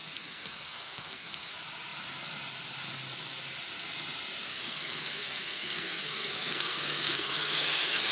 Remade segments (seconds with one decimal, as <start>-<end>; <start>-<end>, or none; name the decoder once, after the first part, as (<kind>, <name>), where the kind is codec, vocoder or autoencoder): 0.0-1.5 (codec, SNAC); 4.5-8.1